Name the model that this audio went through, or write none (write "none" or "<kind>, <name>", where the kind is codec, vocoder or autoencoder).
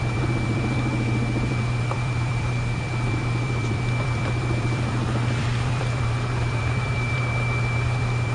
vocoder, BigVGAN v2